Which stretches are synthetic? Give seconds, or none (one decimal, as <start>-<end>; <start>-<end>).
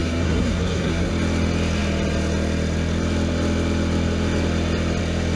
0.0-1.1